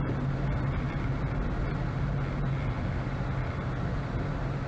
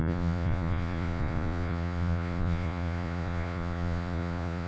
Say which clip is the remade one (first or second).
second